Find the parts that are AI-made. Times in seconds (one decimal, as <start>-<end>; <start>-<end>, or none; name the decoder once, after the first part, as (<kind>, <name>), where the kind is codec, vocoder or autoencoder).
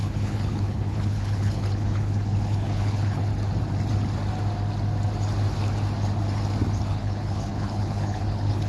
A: 0.0-3.3 (codec, HILCodec); 6.9-8.7